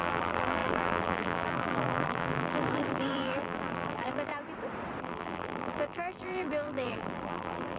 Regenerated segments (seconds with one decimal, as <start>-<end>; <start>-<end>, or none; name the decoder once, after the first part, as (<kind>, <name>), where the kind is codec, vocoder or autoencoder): 0.0-4.3 (vocoder, BigVGAN v2); 5.0-7.8